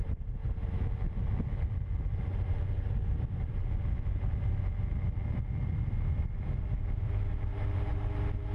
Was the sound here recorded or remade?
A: recorded